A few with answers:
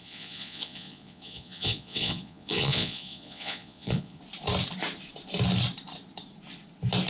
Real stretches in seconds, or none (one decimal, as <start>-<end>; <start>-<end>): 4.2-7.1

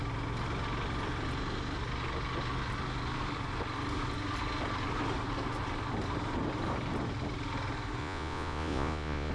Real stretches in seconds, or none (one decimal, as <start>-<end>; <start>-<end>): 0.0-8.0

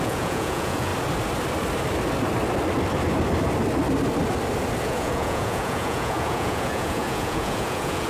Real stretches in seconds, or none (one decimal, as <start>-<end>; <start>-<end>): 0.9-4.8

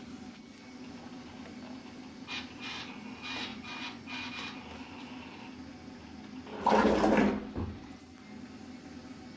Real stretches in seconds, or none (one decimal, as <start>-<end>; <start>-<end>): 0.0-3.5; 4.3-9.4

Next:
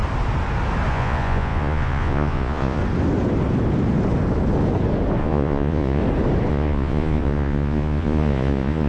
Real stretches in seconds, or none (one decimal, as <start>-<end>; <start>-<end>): 0.0-0.9; 2.8-5.2; 6.0-6.5

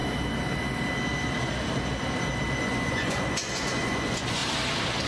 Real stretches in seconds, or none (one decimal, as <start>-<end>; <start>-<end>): 0.0-2.6; 4.4-5.1

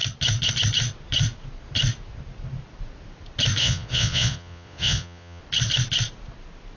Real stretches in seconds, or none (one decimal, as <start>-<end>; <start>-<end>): 0.0-3.6; 5.4-6.8